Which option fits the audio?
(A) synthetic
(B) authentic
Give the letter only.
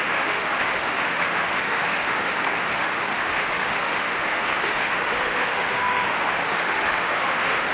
A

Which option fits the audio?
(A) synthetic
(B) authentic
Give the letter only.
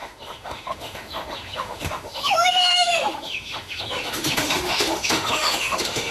A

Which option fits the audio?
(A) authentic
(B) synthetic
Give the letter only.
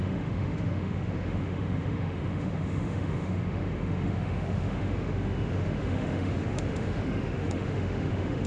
B